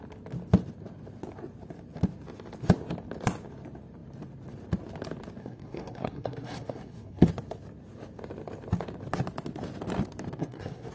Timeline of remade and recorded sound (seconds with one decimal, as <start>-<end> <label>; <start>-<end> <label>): 0.0-5.4 recorded; 5.4-7.3 remade; 7.3-10.4 recorded; 10.4-10.9 remade